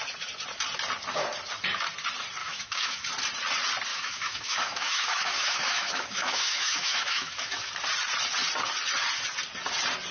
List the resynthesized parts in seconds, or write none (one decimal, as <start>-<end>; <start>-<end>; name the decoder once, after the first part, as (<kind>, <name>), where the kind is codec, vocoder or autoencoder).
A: 2.4-3.1 (autoencoder, DAC-VAE); 3.9-7.7